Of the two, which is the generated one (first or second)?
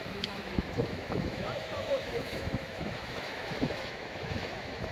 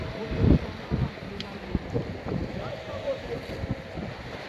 first